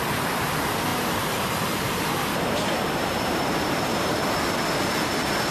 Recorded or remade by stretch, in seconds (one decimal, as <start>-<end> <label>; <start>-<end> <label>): 0.0-0.9 recorded; 0.9-4.2 remade; 4.2-5.5 recorded